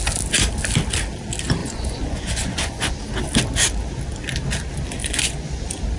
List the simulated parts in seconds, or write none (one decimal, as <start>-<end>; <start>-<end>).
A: 1.6-2.9; 5.0-5.6

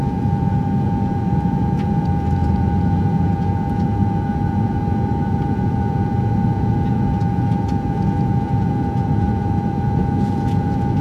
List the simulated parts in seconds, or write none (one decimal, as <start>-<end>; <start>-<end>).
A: 0.0-11.0

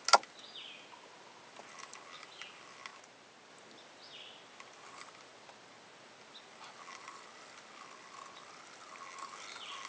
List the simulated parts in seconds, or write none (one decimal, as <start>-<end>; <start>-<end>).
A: none

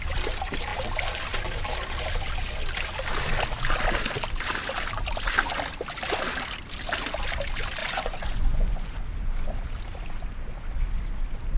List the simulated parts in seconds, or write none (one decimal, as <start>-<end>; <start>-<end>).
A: 7.8-9.0

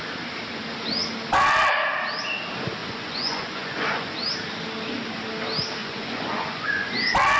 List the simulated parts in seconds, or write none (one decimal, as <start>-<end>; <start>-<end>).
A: 2.8-4.1; 5.8-6.9

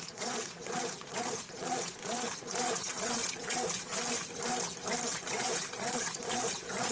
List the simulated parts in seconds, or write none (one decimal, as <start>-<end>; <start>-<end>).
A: 0.0-3.9; 5.1-6.9